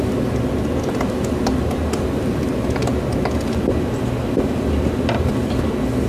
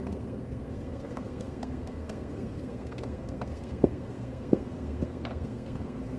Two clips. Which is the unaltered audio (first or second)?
first